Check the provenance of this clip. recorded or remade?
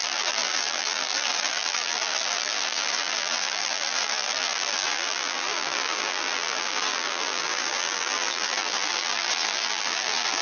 remade